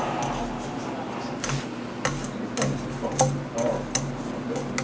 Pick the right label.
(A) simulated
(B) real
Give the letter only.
B